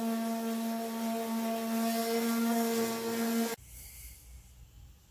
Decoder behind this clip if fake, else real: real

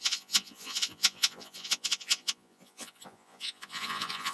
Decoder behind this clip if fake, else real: fake, vocoder, Vocos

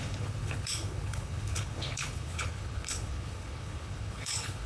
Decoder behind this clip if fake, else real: fake, codec, HILCodec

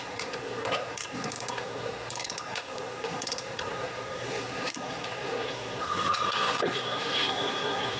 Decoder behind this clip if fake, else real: fake, codec, SNAC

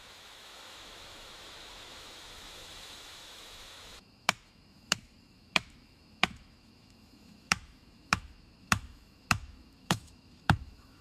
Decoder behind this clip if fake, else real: fake, autoencoder, DAC-VAE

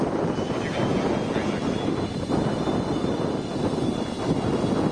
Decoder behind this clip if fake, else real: real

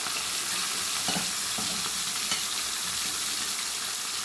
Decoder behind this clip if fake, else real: real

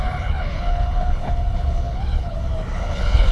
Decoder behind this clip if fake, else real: fake, codec, HILCodec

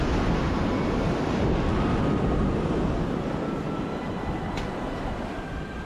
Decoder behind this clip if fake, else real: real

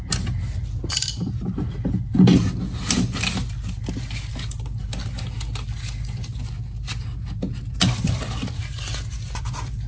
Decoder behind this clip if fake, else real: real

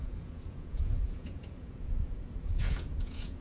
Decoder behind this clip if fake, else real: fake, vocoder, Vocos